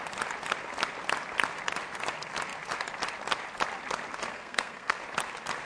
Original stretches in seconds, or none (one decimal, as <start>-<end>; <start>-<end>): 0.0-4.3; 5.0-5.6